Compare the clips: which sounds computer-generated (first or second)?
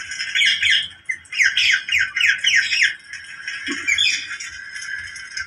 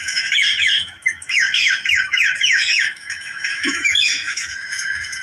second